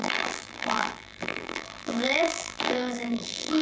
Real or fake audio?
fake